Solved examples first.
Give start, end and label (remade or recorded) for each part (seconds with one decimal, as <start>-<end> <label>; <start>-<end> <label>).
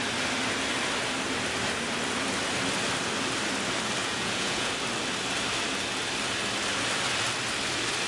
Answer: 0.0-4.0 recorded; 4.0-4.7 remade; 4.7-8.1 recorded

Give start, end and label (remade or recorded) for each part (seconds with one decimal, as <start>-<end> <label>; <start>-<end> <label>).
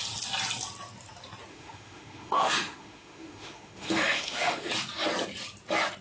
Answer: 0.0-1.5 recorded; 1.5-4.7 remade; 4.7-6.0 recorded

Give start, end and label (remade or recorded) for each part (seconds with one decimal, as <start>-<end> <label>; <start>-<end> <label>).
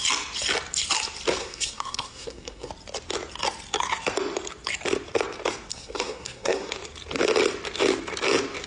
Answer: 0.0-1.4 recorded; 1.4-2.7 remade; 2.7-5.7 recorded; 5.7-6.7 remade; 6.7-8.7 recorded